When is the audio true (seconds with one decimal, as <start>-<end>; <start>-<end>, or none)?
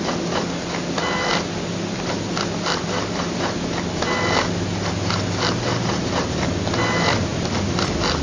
0.0-8.2